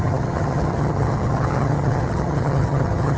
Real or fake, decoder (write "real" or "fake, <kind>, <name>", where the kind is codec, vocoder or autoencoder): fake, vocoder, HiFi-GAN